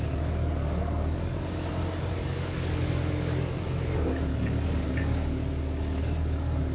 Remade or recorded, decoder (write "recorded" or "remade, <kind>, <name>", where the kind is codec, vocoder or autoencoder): remade, codec, DAC